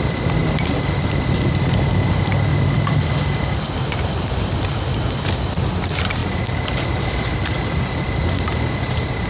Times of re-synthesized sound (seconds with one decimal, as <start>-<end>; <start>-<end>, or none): 2.5-4.2